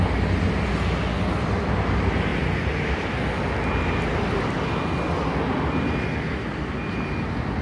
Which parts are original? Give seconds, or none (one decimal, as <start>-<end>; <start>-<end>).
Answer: 0.0-7.6